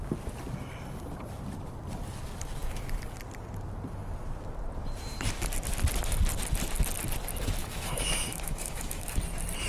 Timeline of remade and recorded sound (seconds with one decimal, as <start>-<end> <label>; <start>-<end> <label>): 0.0-7.6 recorded; 7.6-9.2 remade; 9.2-9.7 recorded